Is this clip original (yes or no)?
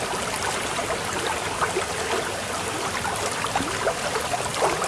yes